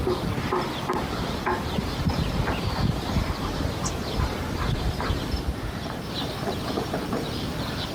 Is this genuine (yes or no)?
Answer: no